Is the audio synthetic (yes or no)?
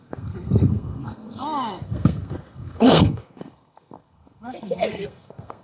yes